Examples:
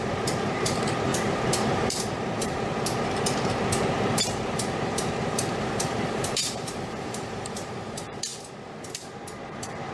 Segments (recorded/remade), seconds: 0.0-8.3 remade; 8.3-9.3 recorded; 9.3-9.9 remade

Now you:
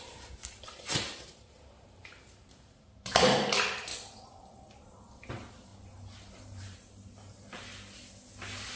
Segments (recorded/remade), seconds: 0.0-3.9 remade; 3.9-5.3 recorded; 5.3-5.7 remade; 5.7-6.3 recorded; 6.3-7.7 remade; 7.7-8.8 recorded

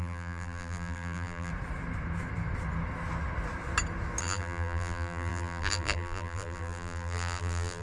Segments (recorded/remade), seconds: 0.0-1.5 remade; 1.5-4.2 recorded; 4.2-7.8 remade

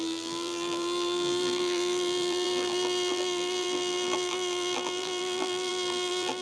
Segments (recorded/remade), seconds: 0.0-6.4 remade

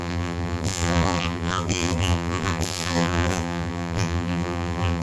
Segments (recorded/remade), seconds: 0.0-5.0 remade